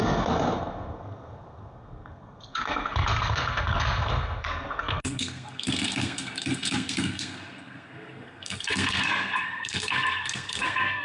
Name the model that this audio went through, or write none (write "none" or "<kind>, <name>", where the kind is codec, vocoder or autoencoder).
codec, SNAC